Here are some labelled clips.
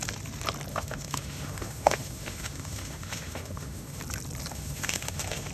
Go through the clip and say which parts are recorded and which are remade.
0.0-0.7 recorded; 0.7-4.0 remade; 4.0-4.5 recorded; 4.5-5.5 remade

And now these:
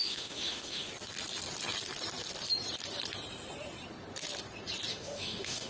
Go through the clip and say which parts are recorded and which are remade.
0.0-0.9 remade; 0.9-4.9 recorded; 4.9-5.7 remade